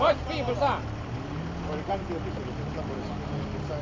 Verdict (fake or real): real